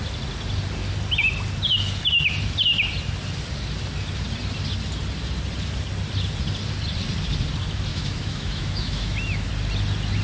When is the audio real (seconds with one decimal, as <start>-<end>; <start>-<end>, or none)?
0.0-7.9; 9.5-10.2